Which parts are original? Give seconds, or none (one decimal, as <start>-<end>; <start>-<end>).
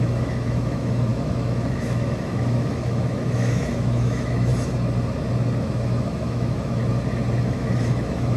4.5-5.6; 6.8-7.4